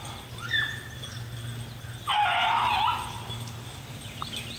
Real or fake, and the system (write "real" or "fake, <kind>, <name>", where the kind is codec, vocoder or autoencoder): real